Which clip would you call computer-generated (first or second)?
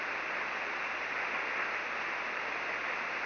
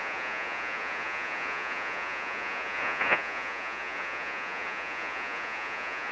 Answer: second